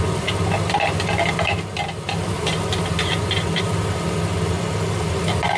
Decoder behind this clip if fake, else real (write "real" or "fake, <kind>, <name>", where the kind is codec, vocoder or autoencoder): real